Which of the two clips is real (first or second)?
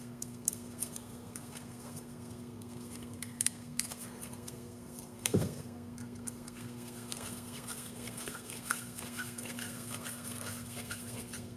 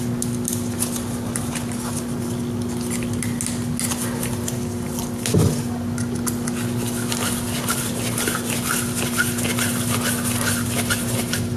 second